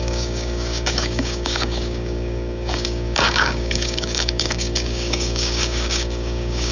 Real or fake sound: fake